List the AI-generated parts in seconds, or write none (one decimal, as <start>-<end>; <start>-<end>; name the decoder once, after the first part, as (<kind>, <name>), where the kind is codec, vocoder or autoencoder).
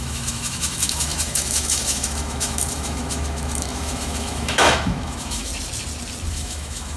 0.0-5.5 (autoencoder, DAC-VAE); 6.3-7.0